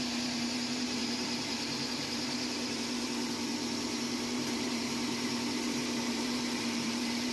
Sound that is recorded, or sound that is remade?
remade